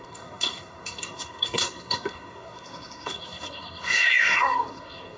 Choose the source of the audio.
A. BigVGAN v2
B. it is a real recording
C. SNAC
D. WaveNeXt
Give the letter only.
C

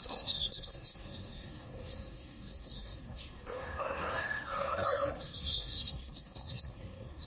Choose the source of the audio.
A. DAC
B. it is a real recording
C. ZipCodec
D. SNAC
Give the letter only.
D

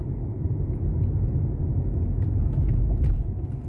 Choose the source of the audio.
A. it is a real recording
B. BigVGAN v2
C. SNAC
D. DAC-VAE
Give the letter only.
A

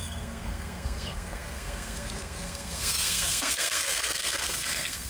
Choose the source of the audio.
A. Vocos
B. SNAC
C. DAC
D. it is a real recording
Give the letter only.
B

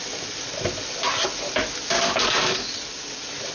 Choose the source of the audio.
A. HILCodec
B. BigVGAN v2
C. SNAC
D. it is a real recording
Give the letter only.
D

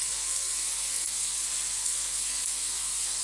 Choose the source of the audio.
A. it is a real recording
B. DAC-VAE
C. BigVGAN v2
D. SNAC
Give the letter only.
D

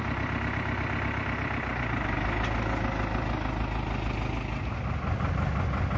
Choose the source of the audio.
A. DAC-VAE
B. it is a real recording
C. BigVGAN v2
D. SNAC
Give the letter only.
B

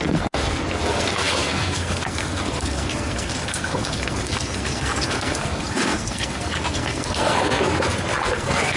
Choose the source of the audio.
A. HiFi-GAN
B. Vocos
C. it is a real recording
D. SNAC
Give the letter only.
D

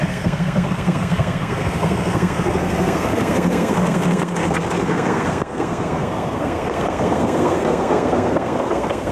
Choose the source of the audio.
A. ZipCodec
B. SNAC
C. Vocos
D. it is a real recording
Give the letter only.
B